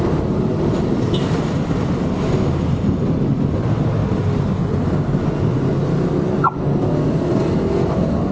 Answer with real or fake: real